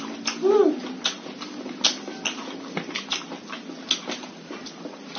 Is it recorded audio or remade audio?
recorded